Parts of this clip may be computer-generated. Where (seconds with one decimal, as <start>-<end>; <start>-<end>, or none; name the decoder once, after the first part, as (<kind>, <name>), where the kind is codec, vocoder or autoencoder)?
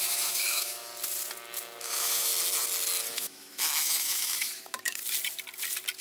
0.0-0.9 (autoencoder, DAC-VAE); 1.8-2.3; 3.1-5.0